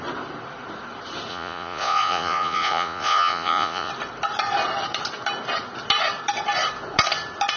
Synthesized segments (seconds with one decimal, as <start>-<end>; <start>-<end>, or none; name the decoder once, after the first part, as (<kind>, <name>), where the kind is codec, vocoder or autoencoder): 1.3-3.9 (vocoder, Vocos)

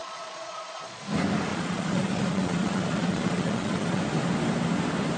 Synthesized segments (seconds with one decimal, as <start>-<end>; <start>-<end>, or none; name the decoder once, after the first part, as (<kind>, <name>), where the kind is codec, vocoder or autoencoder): 0.0-1.0 (vocoder, Vocos); 1.5-4.0

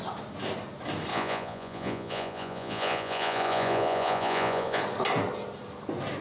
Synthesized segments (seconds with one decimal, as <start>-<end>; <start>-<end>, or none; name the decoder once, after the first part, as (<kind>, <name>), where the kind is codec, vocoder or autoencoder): 1.1-4.8 (vocoder, Vocos)

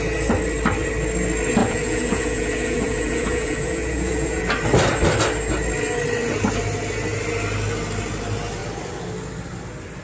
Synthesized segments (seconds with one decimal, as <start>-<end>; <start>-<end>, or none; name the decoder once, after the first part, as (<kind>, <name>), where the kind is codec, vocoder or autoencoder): 1.6-4.4 (vocoder, Vocos)

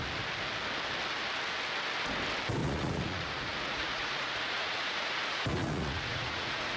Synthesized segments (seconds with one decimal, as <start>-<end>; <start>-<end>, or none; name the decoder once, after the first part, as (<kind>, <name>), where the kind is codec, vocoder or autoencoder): 2.6-6.8 (vocoder, Vocos)

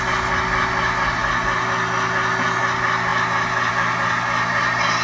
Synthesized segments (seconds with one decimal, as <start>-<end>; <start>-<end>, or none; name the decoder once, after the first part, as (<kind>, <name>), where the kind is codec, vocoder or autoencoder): none